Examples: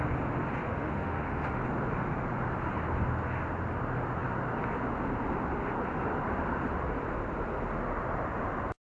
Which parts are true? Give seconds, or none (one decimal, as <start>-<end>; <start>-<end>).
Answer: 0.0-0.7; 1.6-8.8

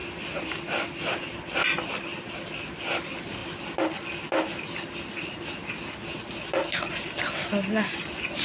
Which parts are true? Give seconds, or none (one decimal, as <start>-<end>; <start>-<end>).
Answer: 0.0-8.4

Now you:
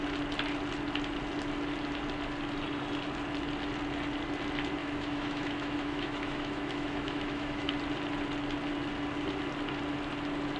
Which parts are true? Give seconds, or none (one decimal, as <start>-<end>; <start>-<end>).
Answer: 0.0-4.8; 7.7-10.6

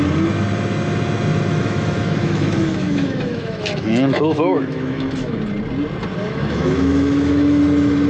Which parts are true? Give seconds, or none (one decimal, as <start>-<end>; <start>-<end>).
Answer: 0.0-1.5; 5.4-6.2; 7.6-8.1